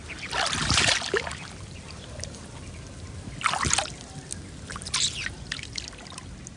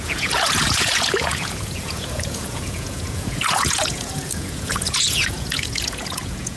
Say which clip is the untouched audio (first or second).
first